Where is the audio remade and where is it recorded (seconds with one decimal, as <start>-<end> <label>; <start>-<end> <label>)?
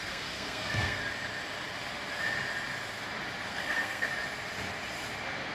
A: 0.0-1.0 remade; 1.0-3.5 recorded; 3.5-4.1 remade; 4.1-5.5 recorded